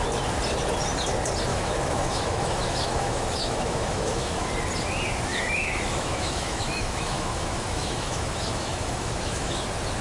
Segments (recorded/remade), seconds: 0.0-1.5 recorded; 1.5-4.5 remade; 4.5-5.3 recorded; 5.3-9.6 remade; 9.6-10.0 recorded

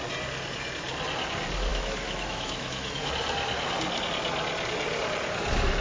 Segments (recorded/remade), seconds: 0.0-1.7 recorded; 1.7-3.1 remade; 3.1-5.8 recorded

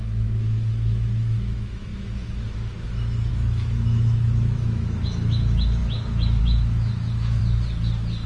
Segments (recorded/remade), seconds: 0.0-7.4 remade; 7.4-8.3 recorded

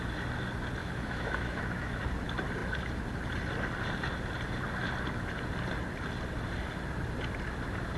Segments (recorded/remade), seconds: 0.0-0.8 recorded; 0.8-2.0 remade; 2.0-8.0 recorded

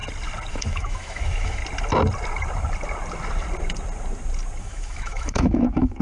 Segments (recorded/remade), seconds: 0.0-0.5 recorded; 0.5-1.6 remade; 1.6-4.6 recorded; 4.6-6.0 remade

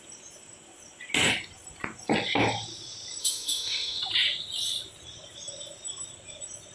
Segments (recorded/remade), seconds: 0.0-3.2 recorded; 3.2-4.0 remade; 4.0-6.7 recorded

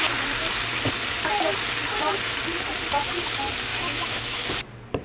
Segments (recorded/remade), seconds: 0.0-3.7 recorded; 3.7-4.5 remade; 4.5-5.0 recorded